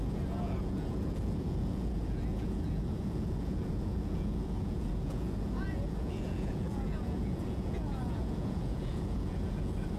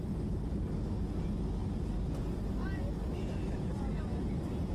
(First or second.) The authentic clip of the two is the second